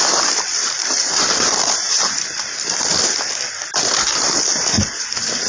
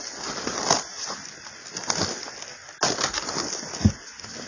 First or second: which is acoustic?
second